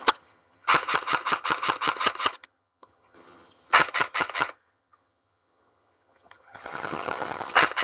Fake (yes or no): yes